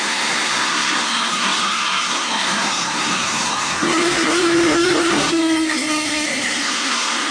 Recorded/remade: remade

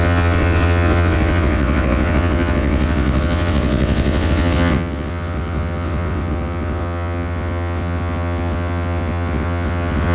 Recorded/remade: remade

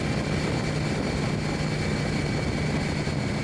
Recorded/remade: recorded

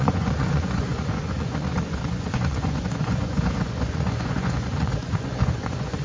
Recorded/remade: remade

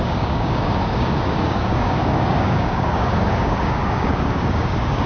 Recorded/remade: remade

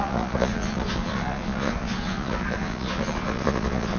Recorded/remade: remade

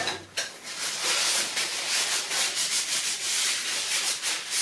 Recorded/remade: recorded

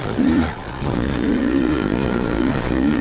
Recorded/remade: remade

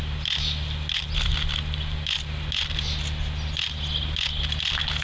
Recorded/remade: recorded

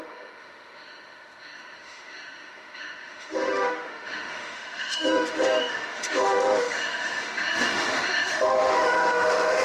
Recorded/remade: remade